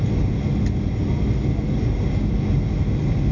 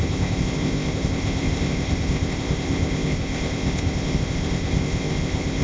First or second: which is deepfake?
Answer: second